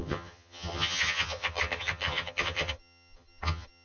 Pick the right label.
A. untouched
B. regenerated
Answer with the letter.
B